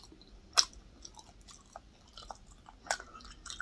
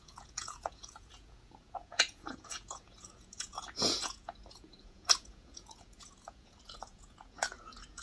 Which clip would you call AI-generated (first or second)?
second